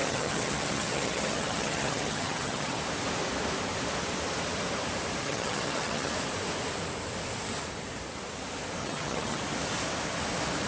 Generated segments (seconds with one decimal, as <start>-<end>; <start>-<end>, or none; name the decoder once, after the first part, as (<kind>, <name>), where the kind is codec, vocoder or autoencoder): 0.0-2.8 (vocoder, HiFi-GAN); 5.2-6.1; 8.8-9.4

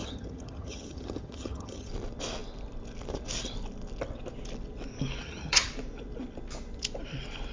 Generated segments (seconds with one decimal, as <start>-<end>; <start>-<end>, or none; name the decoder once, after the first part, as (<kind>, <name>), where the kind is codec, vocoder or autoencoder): 0.0-1.9 (vocoder, HiFi-GAN); 5.2-5.7

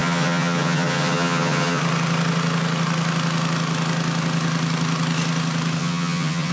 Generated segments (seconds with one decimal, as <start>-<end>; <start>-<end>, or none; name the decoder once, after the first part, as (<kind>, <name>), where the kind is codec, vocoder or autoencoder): 0.0-1.8 (vocoder, HiFi-GAN); 5.8-6.5

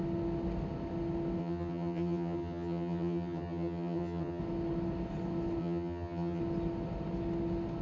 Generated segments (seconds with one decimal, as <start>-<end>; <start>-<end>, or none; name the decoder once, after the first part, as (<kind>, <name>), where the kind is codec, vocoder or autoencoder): 1.4-4.4 (vocoder, HiFi-GAN); 5.6-6.4

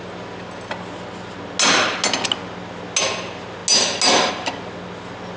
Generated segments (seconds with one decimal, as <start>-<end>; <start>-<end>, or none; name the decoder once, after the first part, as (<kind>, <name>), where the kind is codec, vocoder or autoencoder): none

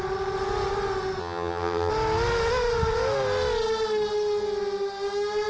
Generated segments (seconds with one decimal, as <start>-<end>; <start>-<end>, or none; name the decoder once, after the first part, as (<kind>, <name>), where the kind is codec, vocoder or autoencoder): 1.2-1.9 (vocoder, HiFi-GAN)

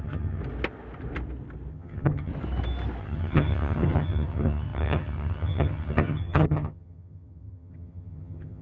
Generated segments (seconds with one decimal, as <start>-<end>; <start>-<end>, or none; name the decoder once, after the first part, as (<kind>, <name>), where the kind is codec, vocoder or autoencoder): 0.0-0.4 (vocoder, HiFi-GAN); 1.7-2.3; 3.0-8.6